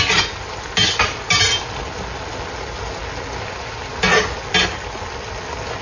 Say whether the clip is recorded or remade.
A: recorded